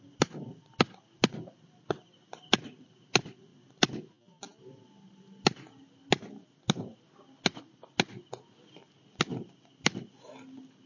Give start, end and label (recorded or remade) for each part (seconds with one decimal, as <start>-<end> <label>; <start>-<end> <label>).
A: 0.0-10.9 recorded